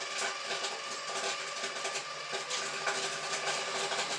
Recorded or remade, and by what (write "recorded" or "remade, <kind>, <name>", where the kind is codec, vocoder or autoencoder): recorded